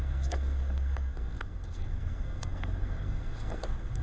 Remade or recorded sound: remade